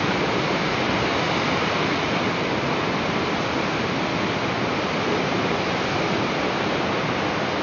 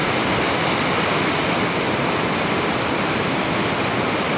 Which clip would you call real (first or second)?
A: first